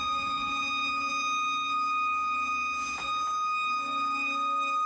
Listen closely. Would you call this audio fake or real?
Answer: real